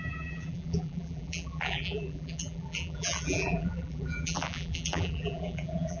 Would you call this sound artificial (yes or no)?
yes